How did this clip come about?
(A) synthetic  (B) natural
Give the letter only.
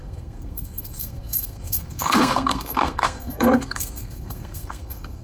A